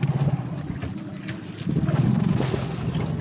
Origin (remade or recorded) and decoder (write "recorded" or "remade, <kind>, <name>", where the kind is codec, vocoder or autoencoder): recorded